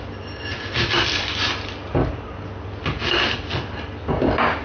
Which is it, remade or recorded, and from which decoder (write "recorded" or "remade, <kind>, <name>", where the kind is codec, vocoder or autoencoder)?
recorded